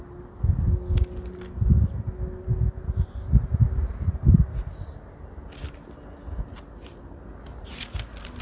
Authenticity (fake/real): real